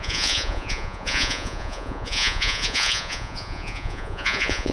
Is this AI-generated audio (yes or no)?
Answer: yes